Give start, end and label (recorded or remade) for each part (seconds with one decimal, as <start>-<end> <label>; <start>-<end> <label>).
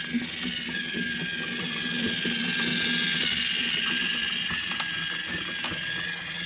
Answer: 0.0-3.2 recorded; 3.2-5.0 remade; 5.0-6.5 recorded